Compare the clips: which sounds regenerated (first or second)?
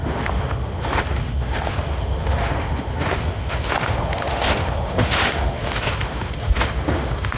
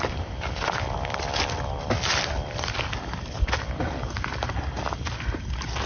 first